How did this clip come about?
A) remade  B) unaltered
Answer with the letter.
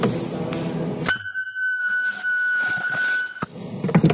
B